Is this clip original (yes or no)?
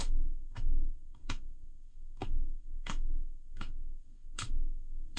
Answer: no